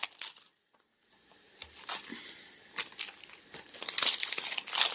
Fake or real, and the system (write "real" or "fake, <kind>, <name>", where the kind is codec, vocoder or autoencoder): real